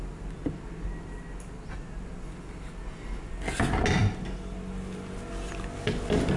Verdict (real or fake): real